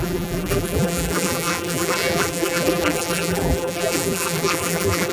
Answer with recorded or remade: remade